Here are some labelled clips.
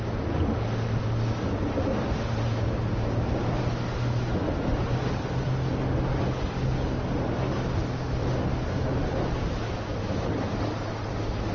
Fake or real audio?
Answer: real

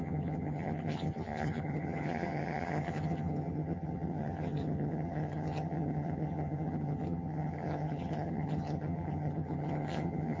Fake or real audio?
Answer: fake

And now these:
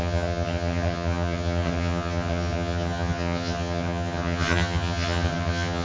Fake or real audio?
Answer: fake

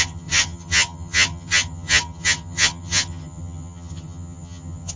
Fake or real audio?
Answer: fake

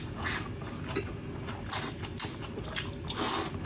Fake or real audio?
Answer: real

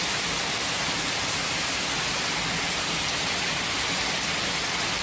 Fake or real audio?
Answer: real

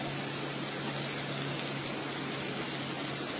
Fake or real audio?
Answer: real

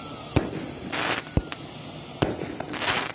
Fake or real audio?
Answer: real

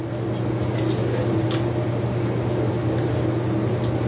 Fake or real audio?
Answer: real